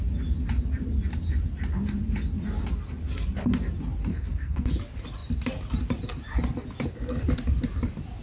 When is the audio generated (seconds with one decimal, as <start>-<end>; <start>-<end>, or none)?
4.1-4.7